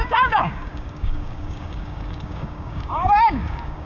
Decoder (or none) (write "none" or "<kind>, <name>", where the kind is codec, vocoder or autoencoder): codec, DAC